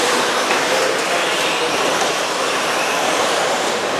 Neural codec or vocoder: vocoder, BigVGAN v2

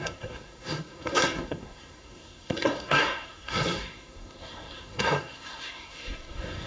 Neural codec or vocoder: codec, SNAC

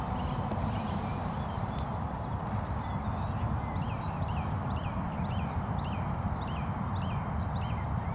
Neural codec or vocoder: vocoder, BigVGAN v2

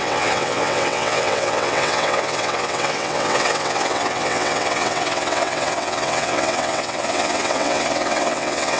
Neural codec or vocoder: vocoder, WaveNeXt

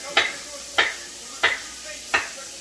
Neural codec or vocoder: none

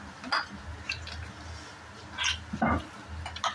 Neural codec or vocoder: none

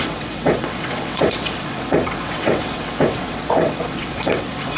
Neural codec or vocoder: vocoder, WaveNeXt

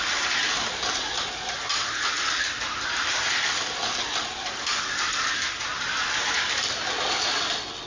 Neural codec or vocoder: none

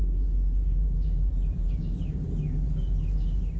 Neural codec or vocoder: none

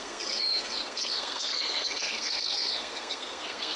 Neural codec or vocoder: codec, SNAC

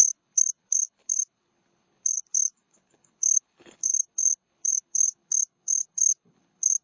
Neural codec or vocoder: codec, HILCodec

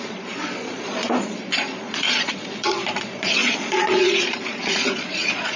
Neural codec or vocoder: vocoder, Vocos